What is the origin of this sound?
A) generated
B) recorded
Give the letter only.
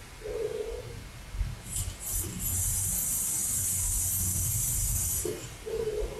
B